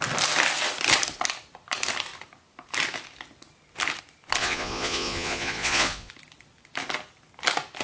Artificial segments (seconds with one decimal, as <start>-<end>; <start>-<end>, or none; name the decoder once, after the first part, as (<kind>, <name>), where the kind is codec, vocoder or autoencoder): 4.4-6.1 (vocoder, Vocos)